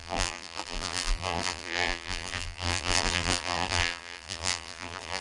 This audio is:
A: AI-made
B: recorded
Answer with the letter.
A